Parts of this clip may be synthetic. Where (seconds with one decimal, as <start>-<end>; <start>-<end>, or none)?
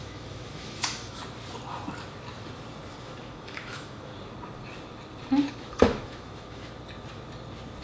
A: 0.0-1.2; 3.0-4.1; 5.5-6.7